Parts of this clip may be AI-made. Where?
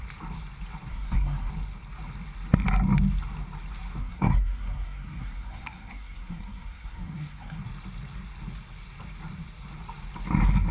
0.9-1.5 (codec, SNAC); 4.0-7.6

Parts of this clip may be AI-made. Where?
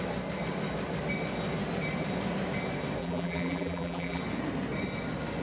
3.0-4.2 (vocoder, BigVGAN v2)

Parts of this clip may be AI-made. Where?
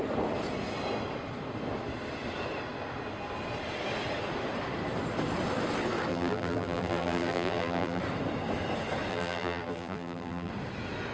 6.1-8.0 (vocoder, BigVGAN v2); 9.1-10.5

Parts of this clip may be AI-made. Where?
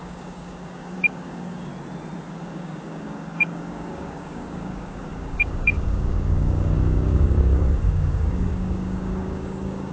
0.0-1.7 (codec, DAC); 2.3-9.9